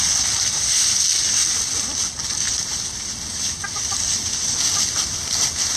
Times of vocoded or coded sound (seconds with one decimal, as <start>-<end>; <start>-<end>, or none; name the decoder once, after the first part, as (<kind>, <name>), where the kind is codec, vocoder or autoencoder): none